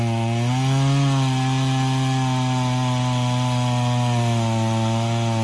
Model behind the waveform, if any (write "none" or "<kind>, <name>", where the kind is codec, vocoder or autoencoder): none